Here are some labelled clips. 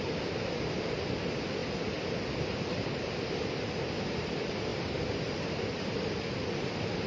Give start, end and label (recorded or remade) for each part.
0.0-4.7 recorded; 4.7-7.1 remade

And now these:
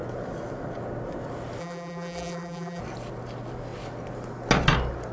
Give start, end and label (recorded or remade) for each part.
0.0-1.6 recorded; 1.6-2.8 remade; 2.8-5.1 recorded